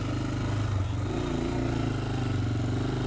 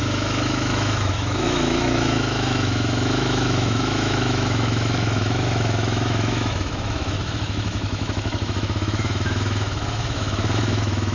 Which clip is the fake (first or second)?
second